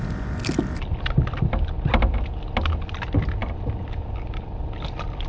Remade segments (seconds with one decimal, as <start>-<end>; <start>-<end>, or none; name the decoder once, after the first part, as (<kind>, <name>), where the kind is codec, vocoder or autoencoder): none